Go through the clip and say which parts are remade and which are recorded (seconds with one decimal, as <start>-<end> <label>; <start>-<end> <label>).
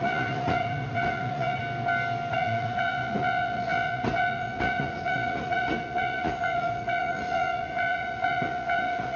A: 0.0-1.6 remade; 1.6-2.3 recorded; 2.3-9.2 remade